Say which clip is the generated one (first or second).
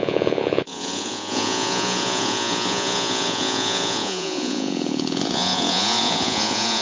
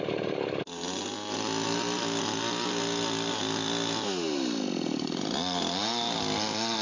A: first